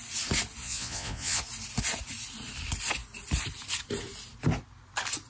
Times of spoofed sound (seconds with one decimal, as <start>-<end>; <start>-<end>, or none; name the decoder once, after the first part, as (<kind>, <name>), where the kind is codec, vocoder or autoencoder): 0.6-1.4 (vocoder, Vocos)